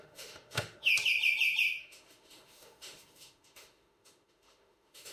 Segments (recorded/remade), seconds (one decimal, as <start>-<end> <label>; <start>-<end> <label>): 0.0-0.9 remade; 0.9-1.8 recorded; 1.8-5.1 remade